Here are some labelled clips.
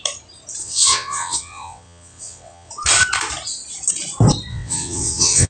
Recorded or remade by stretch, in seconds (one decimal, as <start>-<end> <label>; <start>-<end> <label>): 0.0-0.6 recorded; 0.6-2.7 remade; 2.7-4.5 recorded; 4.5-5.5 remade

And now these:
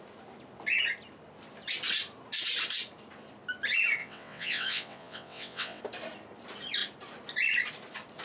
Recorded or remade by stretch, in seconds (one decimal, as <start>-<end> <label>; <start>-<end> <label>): 0.0-4.0 recorded; 4.0-5.8 remade; 5.8-8.2 recorded

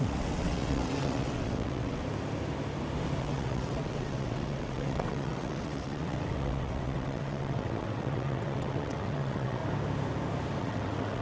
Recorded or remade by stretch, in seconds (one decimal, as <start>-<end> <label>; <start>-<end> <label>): 0.0-2.0 remade; 2.0-3.2 recorded; 3.2-9.6 remade; 9.6-10.6 recorded; 10.6-11.2 remade

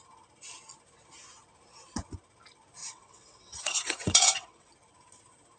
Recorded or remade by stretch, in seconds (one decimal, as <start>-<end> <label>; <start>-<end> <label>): 0.0-2.8 recorded; 2.8-4.7 remade; 4.7-5.6 recorded

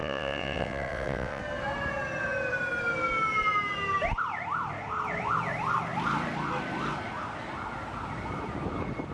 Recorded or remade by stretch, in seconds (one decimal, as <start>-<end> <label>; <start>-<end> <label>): 0.0-1.4 remade; 1.4-9.1 recorded

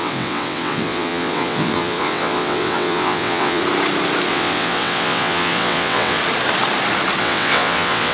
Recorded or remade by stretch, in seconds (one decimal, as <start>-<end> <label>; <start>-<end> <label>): 0.0-3.6 remade; 3.6-4.3 recorded; 4.3-6.2 remade; 6.2-7.2 recorded; 7.2-8.1 remade